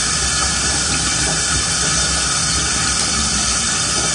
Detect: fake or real real